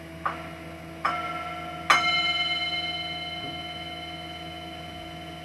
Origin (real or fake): real